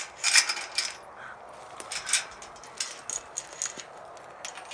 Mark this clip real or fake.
real